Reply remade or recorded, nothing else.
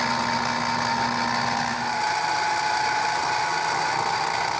recorded